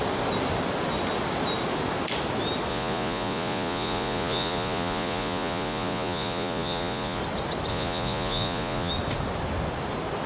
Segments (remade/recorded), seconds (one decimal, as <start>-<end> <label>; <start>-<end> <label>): 0.0-2.7 recorded; 2.7-7.2 remade; 7.2-7.7 recorded; 7.7-8.9 remade; 8.9-10.3 recorded